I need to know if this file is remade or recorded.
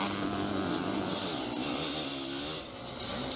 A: recorded